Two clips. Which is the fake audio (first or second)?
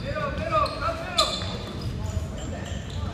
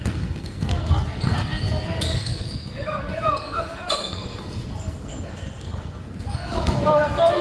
second